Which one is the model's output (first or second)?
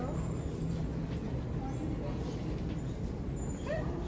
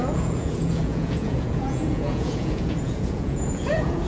second